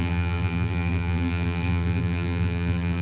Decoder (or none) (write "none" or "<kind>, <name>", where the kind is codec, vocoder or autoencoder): vocoder, BigVGAN v2